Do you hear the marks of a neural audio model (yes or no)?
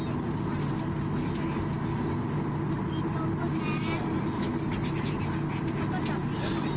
no